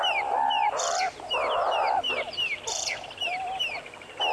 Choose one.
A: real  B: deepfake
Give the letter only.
B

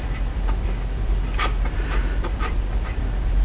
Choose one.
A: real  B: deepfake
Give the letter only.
B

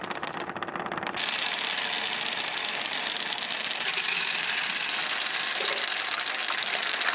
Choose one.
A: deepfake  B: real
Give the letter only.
B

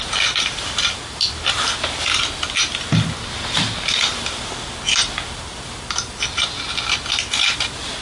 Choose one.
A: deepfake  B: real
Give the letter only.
B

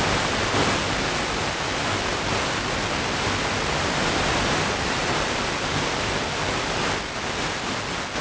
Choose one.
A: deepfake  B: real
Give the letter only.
B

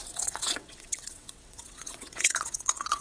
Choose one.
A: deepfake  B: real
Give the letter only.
A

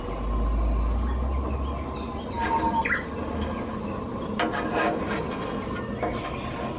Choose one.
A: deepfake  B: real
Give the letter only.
B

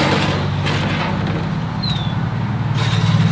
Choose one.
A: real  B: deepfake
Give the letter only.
A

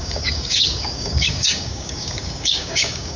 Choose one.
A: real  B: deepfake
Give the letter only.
B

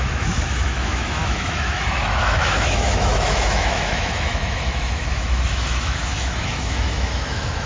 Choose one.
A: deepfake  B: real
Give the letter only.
A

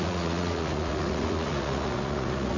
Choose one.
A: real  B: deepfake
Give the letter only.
B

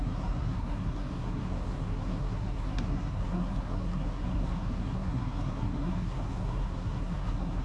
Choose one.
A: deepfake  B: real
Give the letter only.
A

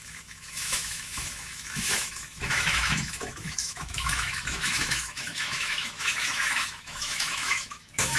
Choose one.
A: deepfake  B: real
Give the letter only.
A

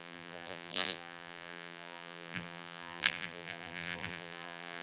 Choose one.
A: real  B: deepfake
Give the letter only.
B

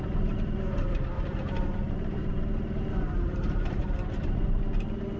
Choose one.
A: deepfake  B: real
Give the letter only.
A